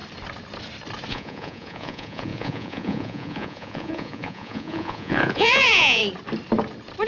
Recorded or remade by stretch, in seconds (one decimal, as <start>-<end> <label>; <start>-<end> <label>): 0.0-1.1 recorded; 1.1-6.0 remade; 6.0-7.1 recorded